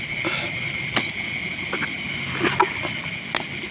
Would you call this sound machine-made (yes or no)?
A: no